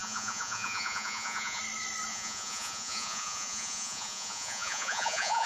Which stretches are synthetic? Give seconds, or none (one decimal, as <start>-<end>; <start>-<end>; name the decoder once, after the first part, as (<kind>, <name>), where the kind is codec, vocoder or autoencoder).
0.0-1.6 (vocoder, Vocos); 2.1-5.5